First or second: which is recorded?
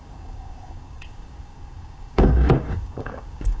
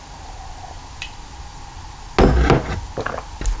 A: second